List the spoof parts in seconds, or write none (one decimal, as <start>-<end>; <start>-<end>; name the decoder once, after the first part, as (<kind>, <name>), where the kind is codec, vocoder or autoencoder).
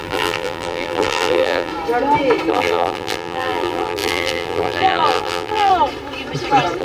0.0-1.7 (vocoder, BigVGAN v2); 2.5-5.7